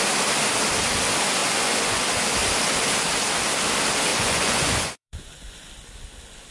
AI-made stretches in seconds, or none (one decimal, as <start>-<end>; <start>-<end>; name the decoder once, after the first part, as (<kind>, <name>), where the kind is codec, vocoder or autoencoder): 1.4-2.0 (vocoder, Vocos); 4.1-5.7